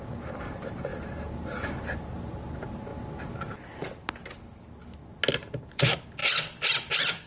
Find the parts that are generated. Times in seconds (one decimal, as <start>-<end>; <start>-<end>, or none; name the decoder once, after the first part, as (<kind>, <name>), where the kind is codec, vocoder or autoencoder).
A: 0.0-2.9 (vocoder, BigVGAN v2); 5.3-6.2